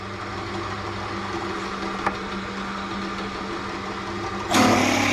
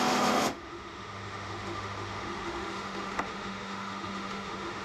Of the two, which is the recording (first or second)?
first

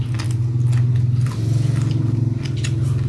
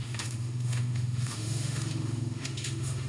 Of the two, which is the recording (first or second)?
first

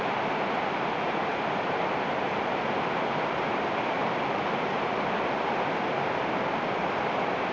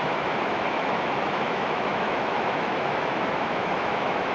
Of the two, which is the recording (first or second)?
first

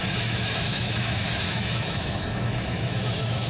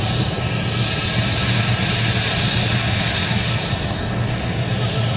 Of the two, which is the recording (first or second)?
second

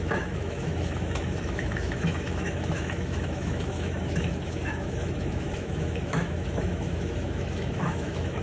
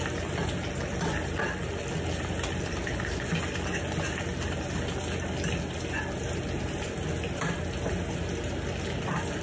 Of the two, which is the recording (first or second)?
second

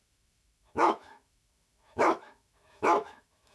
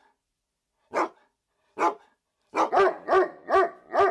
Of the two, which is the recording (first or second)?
second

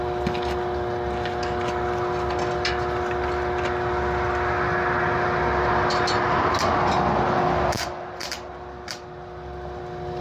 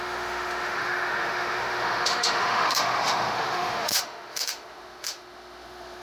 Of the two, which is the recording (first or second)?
first